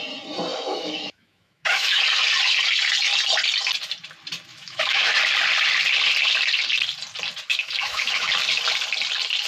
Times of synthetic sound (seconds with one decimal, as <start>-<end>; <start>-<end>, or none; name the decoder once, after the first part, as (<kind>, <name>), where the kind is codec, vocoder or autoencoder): 0.5-2.0 (autoencoder, DAC-VAE); 4.5-5.1; 7.5-8.3